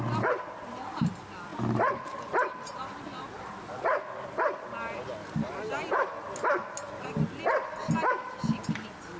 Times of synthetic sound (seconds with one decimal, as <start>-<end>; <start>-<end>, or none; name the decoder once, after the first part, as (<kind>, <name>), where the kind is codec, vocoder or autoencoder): 1.5-4.0 (vocoder, BigVGAN v2)